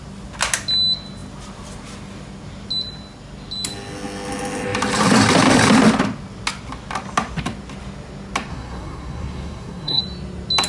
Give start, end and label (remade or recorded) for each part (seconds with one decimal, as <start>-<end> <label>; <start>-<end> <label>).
0.0-8.5 recorded; 8.5-10.0 remade; 10.0-10.7 recorded

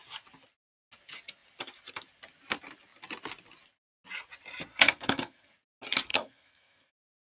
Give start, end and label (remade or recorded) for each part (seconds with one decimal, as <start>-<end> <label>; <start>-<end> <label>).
0.0-4.7 recorded; 4.7-5.5 remade; 5.5-6.1 recorded; 6.1-6.9 remade; 6.9-7.4 recorded

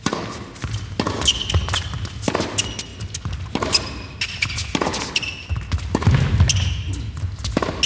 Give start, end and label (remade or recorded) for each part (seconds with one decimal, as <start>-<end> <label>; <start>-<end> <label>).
0.0-7.9 recorded